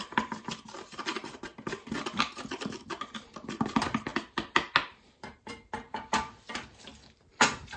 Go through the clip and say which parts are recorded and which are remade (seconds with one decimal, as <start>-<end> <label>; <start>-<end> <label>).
0.0-4.1 remade; 4.1-5.1 recorded; 5.1-7.8 remade